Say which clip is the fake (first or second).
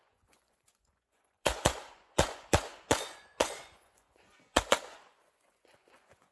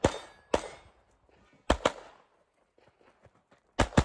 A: first